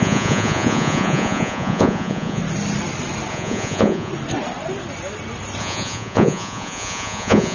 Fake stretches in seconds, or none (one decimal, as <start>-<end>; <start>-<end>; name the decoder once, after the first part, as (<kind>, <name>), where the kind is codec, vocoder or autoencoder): 0.0-2.4 (vocoder, Vocos); 3.3-4.1; 5.6-7.5